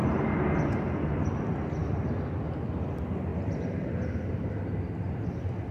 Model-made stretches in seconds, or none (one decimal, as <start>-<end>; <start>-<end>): 0.0-1.4; 1.8-2.7; 3.3-5.3